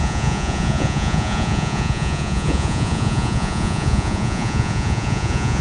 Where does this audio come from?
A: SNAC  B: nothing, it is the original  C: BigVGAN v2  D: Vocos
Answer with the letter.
D